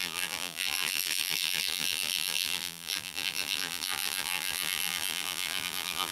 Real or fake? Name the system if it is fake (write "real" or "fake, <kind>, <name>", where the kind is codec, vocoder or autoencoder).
fake, vocoder, BigVGAN v2